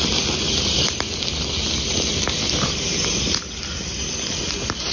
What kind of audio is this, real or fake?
real